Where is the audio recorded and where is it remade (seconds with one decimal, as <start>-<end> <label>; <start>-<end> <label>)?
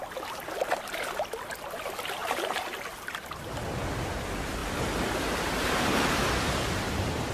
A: 0.0-7.3 recorded